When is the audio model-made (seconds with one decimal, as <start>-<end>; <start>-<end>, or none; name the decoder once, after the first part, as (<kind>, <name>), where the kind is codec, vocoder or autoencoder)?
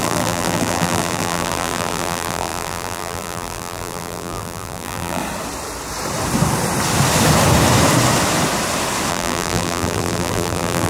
0.0-5.2 (vocoder, BigVGAN v2); 9.1-10.9